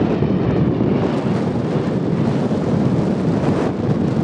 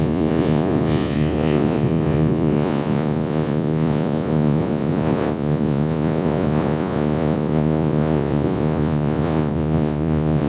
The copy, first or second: second